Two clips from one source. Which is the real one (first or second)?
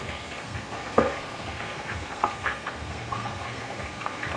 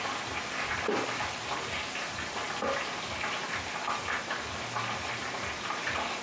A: second